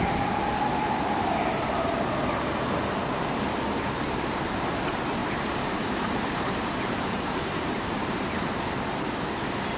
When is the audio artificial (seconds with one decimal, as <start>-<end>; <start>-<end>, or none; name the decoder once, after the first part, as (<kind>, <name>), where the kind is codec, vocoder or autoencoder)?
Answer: 5.2-8.7 (vocoder, BigVGAN v2)